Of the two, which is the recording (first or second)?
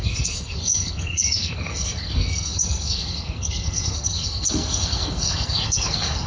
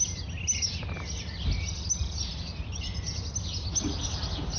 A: second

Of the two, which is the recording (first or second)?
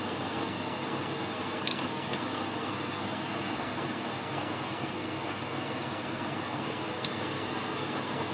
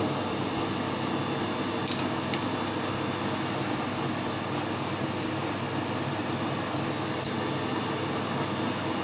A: second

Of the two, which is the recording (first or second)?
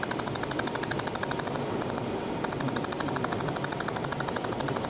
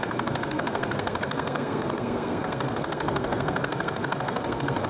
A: first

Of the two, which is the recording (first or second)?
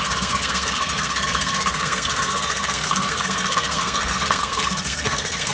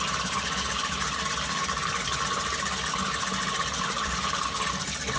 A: second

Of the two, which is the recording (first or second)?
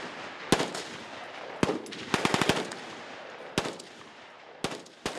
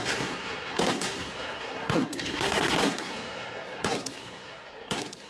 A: first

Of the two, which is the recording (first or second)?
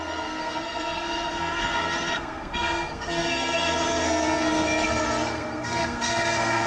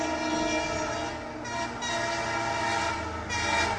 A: second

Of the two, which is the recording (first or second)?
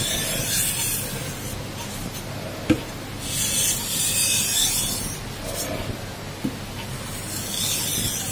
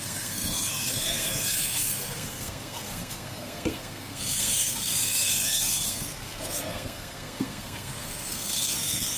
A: first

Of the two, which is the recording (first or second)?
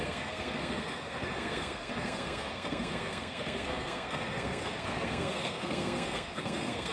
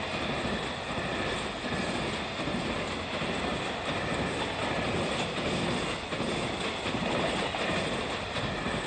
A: second